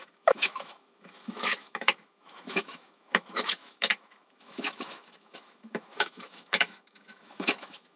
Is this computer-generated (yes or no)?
yes